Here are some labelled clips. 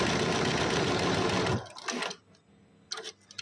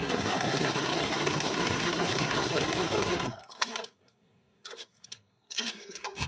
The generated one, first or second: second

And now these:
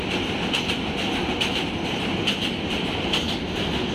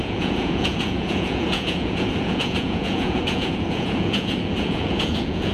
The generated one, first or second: second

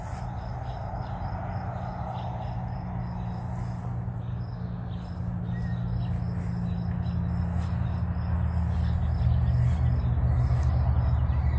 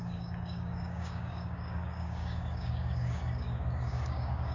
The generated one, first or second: second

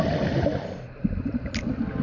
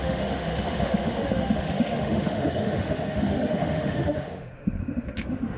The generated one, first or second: second